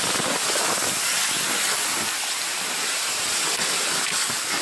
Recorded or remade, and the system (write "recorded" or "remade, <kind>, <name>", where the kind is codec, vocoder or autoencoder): recorded